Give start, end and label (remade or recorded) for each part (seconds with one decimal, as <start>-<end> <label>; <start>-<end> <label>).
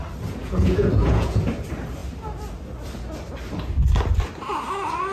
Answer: 0.0-0.4 recorded; 0.4-1.4 remade; 1.4-5.1 recorded